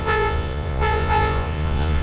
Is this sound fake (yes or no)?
yes